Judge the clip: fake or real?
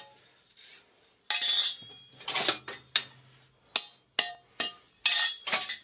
real